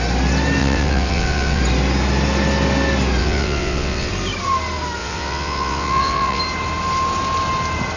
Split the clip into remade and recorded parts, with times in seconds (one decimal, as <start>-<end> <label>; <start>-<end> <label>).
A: 0.0-0.6 recorded; 0.6-1.6 remade; 1.6-3.2 recorded; 3.2-4.1 remade; 4.1-5.0 recorded; 5.0-6.4 remade; 6.4-8.0 recorded